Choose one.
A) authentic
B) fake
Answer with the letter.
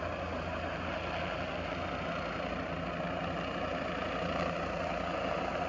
A